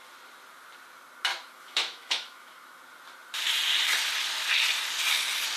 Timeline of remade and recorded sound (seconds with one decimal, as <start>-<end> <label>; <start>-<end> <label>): 0.0-1.3 recorded; 1.3-2.8 remade; 2.8-5.6 recorded